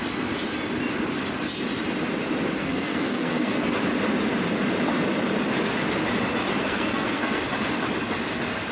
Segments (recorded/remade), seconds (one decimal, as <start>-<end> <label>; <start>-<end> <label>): 0.0-2.6 recorded; 2.6-3.8 remade; 3.8-6.6 recorded; 6.6-7.4 remade; 7.4-8.7 recorded